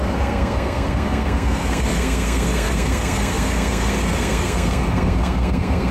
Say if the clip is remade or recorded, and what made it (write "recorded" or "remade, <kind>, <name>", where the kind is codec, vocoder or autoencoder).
remade, codec, SNAC